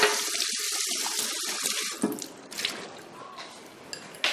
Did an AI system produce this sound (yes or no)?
no